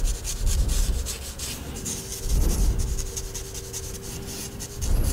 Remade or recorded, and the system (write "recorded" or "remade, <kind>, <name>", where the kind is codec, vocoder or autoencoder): recorded